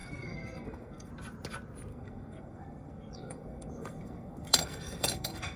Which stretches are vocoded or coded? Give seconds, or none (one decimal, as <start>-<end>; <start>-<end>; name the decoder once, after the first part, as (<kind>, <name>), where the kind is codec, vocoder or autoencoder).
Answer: 0.0-1.1 (codec, SNAC); 1.9-5.6